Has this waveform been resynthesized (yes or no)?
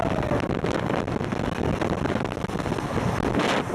no